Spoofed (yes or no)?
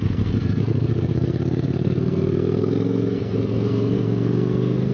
yes